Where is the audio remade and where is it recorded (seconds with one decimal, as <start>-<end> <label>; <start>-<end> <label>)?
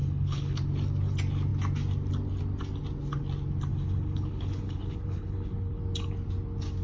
0.0-0.6 remade; 0.6-3.7 recorded; 3.7-5.8 remade; 5.8-6.8 recorded